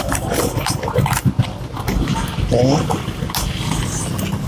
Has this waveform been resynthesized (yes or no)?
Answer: no